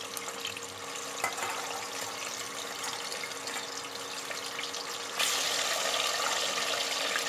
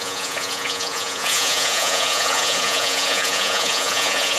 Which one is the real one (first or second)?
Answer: first